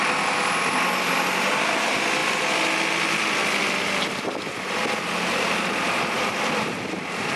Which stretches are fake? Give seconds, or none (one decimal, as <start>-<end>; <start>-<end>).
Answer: none